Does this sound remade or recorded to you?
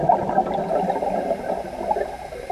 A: recorded